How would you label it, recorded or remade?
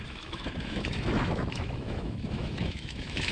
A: remade